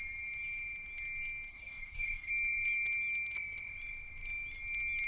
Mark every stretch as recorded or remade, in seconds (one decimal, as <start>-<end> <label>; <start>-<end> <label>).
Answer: 0.0-1.5 recorded; 1.5-2.3 remade; 2.3-5.1 recorded